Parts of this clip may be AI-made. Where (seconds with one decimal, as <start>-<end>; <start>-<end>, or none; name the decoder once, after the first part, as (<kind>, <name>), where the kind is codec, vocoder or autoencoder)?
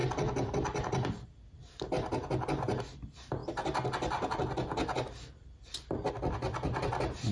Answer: none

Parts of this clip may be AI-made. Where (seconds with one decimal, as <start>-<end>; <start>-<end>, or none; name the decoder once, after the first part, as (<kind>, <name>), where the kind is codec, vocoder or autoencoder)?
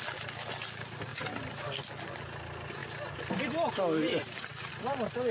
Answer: none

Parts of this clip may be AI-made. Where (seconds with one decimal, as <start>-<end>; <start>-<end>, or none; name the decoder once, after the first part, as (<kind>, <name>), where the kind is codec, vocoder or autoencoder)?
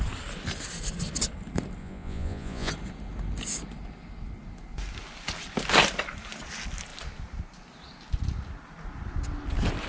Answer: 1.8-2.7 (vocoder, Vocos)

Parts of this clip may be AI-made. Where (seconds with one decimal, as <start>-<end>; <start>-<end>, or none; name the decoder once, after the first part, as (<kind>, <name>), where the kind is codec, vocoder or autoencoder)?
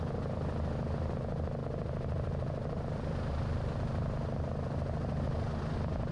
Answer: 1.6-5.3 (vocoder, BigVGAN v2)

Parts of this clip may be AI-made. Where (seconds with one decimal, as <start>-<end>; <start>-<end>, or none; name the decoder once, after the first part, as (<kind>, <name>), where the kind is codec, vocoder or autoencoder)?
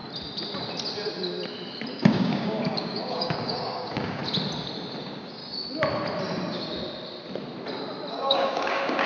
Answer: 1.9-4.2 (codec, DAC); 5.0-5.4; 8.1-9.1